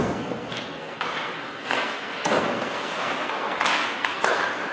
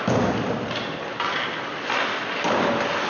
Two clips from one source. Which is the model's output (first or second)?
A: first